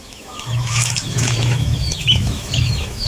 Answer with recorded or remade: remade